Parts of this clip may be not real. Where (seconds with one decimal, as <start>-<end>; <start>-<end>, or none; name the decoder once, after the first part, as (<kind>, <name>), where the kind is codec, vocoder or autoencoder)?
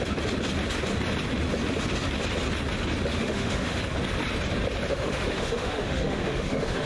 3.1-3.8 (autoencoder, DAC-VAE); 4.9-6.9